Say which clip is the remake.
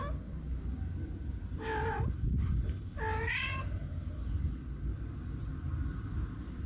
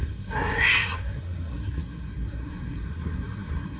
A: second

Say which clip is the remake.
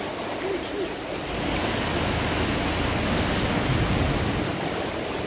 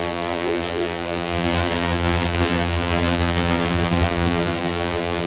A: second